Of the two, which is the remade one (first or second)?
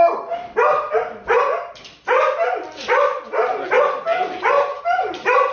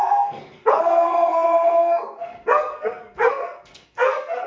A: second